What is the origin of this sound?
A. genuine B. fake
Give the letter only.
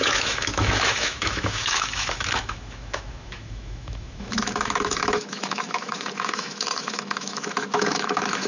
B